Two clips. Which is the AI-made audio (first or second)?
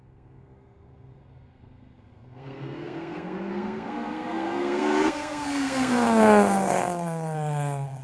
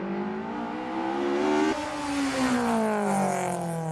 first